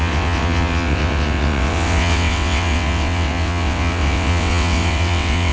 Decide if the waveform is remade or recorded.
remade